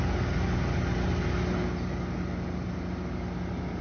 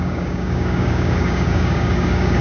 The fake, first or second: second